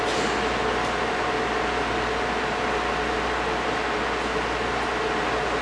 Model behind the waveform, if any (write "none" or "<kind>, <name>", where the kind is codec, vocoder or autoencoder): none